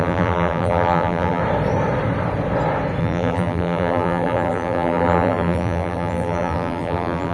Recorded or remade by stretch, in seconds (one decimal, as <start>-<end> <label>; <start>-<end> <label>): 0.0-1.4 remade; 1.4-3.0 recorded; 3.0-7.3 remade